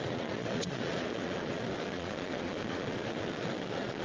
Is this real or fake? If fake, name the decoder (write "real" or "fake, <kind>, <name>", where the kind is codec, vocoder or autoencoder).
fake, vocoder, Vocos